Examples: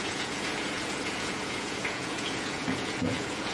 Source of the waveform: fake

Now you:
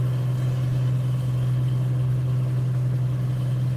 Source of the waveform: real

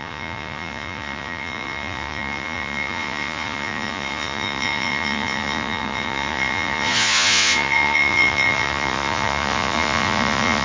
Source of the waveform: fake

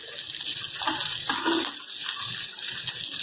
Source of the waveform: real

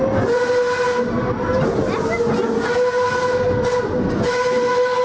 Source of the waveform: real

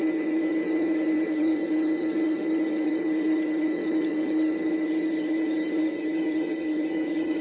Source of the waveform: fake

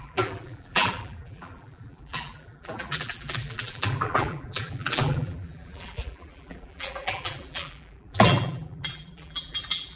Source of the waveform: fake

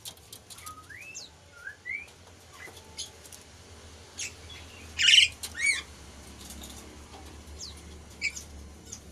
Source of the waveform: real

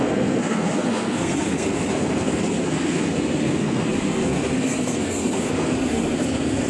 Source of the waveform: fake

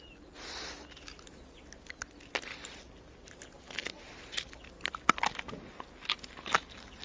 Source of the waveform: real